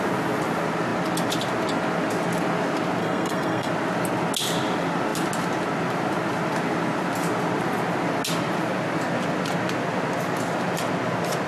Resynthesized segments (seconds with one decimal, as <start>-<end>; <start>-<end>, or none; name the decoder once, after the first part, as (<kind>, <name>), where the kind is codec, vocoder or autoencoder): 3.0-3.7 (codec, SNAC)